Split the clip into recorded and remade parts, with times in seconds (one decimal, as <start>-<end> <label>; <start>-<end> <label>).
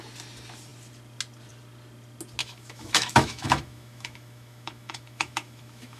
0.0-2.4 recorded; 2.4-6.0 remade